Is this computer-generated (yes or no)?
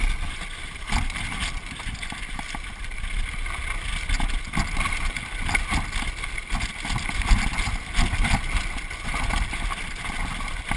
no